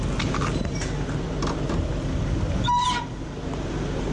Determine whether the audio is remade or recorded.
recorded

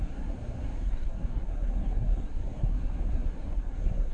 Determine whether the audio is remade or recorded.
remade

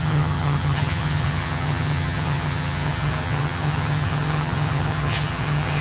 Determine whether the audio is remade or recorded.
remade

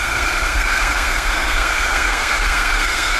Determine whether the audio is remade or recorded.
remade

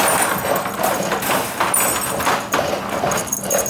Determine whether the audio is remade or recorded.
recorded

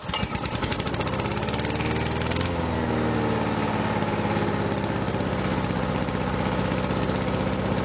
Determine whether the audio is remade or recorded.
recorded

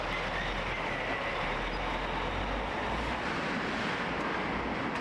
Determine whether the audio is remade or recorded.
recorded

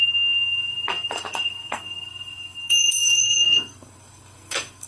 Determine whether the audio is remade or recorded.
remade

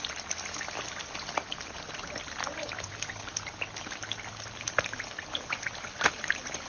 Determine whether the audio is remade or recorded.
recorded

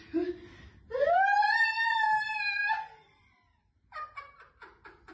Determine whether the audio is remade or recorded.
recorded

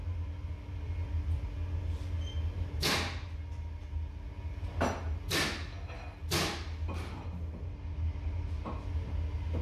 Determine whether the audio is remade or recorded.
recorded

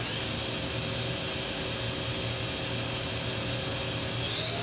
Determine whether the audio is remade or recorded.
recorded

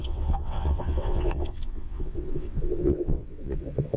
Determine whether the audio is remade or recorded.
remade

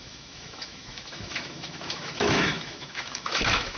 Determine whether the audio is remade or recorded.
remade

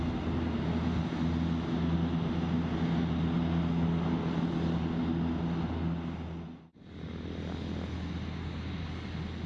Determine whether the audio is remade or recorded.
recorded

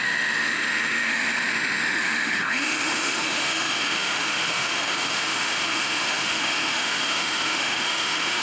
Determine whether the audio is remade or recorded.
remade